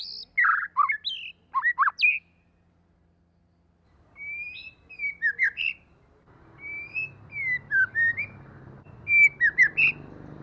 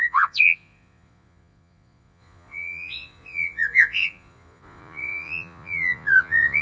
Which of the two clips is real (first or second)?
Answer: first